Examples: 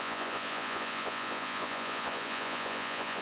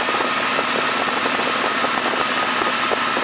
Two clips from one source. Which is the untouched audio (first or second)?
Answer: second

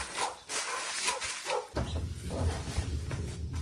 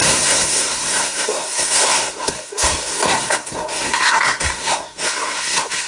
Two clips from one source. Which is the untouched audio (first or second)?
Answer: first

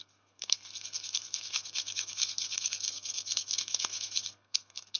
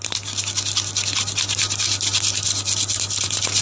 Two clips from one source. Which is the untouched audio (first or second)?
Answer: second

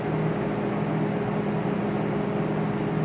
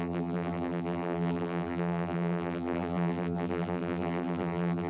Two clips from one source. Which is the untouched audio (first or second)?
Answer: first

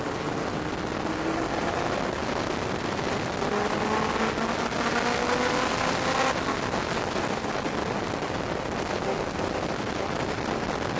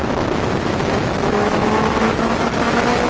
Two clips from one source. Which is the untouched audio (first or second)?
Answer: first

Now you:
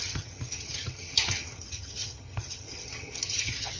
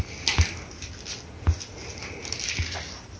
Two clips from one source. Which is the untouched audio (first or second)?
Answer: second